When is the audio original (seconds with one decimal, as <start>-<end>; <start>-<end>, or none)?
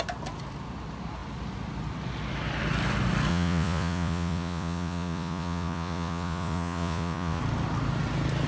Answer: 0.0-3.3; 7.4-8.5